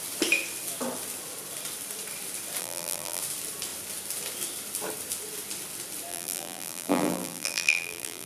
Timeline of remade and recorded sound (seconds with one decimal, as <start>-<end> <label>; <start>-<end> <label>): 0.0-2.6 recorded; 2.6-3.2 remade; 3.2-6.1 recorded; 6.1-8.3 remade